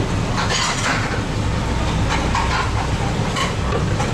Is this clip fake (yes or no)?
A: no